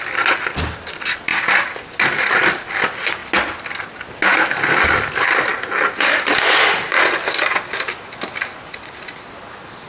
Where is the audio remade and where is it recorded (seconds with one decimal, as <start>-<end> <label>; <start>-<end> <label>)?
0.0-9.9 recorded

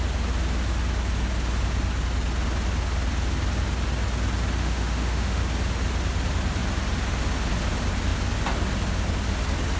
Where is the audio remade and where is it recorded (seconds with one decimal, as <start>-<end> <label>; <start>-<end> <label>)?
0.0-4.6 recorded; 4.6-5.4 remade; 5.4-9.8 recorded

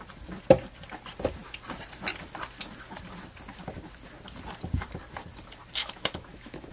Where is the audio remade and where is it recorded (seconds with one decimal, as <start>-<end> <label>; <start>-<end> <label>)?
0.0-5.8 recorded; 5.8-6.7 remade

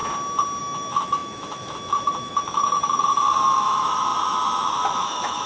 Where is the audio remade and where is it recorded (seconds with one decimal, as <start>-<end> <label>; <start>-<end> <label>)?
0.0-0.6 recorded; 0.6-5.5 remade

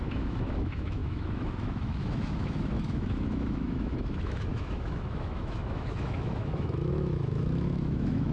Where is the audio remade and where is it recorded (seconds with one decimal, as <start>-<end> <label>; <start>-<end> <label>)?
0.0-8.3 remade

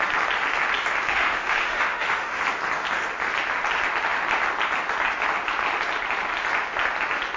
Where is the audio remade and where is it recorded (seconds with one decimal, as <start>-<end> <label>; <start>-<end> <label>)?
0.0-1.1 recorded; 1.1-2.4 remade; 2.4-7.4 recorded

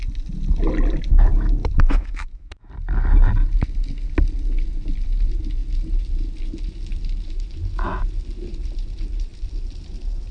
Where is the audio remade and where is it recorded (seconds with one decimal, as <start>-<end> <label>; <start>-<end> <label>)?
0.0-1.6 recorded; 1.6-2.7 remade; 2.7-10.3 recorded